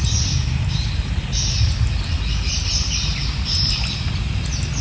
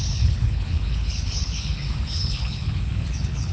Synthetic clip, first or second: second